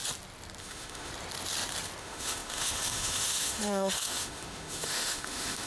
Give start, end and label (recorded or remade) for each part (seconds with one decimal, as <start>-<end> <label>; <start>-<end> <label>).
0.0-0.6 recorded; 0.6-1.1 remade; 1.1-2.0 recorded; 2.0-5.7 remade